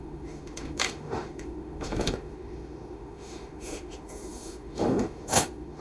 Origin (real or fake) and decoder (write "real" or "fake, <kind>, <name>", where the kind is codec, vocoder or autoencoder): fake, autoencoder, DAC-VAE